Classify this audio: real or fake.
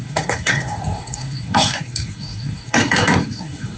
fake